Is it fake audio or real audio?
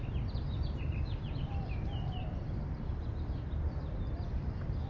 fake